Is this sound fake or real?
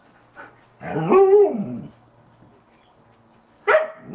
real